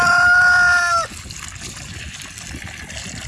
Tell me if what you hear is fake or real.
real